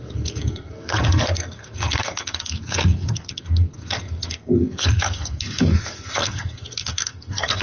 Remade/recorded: remade